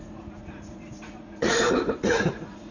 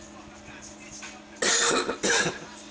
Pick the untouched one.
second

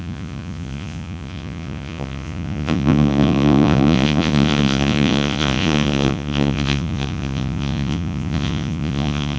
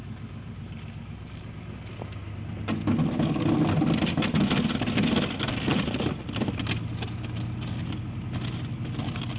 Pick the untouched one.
second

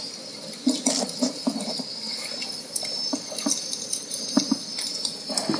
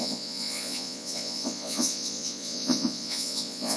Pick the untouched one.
first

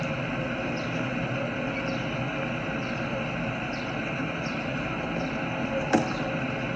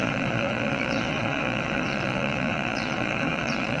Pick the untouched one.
first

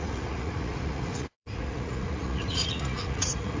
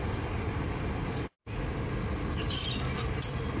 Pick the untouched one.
second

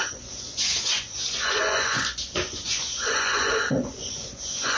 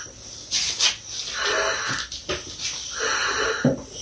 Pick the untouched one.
second